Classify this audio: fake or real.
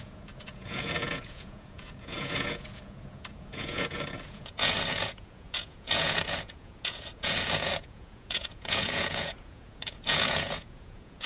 fake